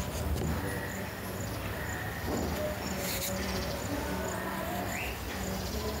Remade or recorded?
recorded